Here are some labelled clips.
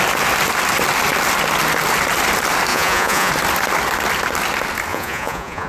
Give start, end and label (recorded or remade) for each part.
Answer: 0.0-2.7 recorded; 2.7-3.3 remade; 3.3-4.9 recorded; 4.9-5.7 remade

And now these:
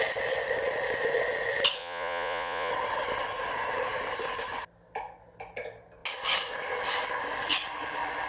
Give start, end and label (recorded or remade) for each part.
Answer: 0.0-1.8 recorded; 1.8-2.7 remade; 2.7-8.3 recorded

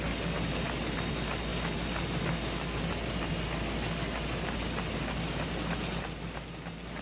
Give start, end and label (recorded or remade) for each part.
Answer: 0.0-7.0 recorded

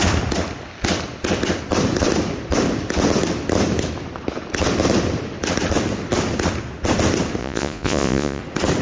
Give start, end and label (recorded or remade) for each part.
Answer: 0.0-7.4 recorded; 7.4-8.4 remade; 8.4-8.8 recorded

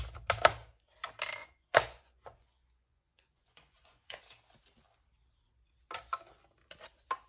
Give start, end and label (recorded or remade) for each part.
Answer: 0.0-1.4 recorded; 1.4-4.2 remade; 4.2-7.3 recorded